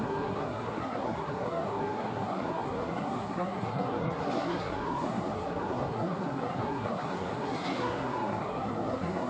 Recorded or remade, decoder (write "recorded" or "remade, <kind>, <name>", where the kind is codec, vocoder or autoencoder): remade, codec, SNAC